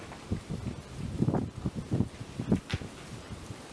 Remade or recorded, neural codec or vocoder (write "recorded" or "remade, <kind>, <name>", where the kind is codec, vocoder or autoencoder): recorded